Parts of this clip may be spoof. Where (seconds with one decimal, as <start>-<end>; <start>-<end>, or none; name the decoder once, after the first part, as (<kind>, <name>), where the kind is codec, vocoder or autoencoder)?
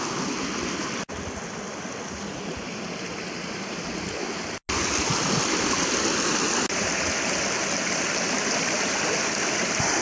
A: none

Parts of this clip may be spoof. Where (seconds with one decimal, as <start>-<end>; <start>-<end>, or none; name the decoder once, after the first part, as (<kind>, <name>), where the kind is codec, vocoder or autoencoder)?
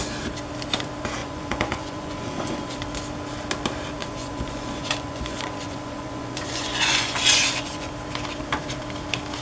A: 1.2-2.8 (vocoder, Vocos); 4.0-7.9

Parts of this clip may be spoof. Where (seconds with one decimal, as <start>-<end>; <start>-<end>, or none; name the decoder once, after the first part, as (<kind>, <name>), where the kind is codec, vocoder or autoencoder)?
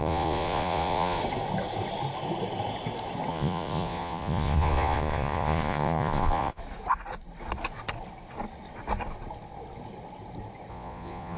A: 0.0-1.2 (vocoder, Vocos); 3.3-6.6; 10.7-11.4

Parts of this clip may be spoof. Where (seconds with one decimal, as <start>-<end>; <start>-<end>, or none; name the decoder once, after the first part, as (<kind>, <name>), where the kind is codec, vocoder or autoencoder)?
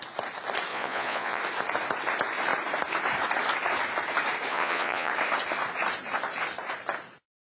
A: 0.7-1.4 (vocoder, Vocos); 4.5-5.1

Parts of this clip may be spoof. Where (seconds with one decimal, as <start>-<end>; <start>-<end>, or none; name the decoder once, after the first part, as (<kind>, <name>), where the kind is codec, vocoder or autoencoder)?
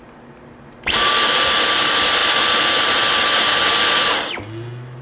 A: none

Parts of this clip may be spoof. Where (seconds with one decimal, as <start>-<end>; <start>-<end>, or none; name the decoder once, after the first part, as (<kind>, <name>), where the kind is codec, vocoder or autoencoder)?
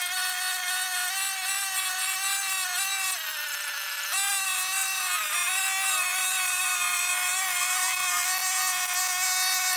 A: none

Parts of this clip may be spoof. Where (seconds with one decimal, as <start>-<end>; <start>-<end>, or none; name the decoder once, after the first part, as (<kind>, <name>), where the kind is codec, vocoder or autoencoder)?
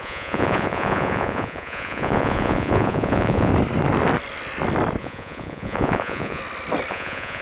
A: 0.0-3.5 (vocoder, Vocos); 5.0-6.4; 6.9-7.4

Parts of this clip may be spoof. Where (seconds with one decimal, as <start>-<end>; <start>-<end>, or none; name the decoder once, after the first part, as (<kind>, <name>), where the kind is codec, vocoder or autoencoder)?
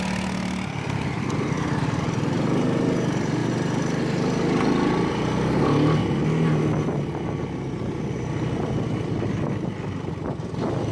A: none